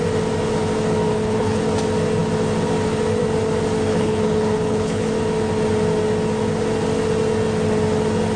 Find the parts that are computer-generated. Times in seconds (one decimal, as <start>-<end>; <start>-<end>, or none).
1.1-1.6; 3.9-5.1